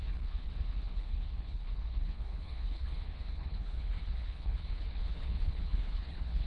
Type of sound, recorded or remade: remade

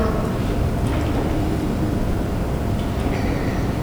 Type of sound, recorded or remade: recorded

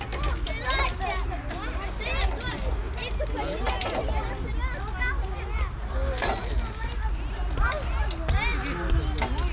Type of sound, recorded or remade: recorded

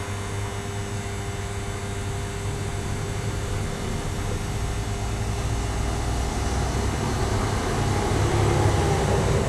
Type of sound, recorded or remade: recorded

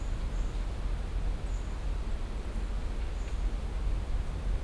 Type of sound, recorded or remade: recorded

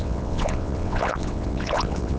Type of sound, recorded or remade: remade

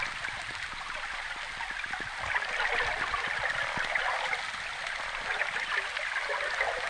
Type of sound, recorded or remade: recorded